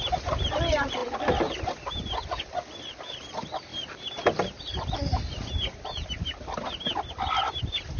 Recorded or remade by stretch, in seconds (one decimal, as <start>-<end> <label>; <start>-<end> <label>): 0.0-8.0 recorded